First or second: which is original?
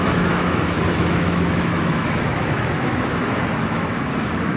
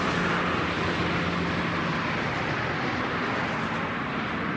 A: second